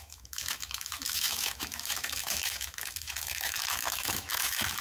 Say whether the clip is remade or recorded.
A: remade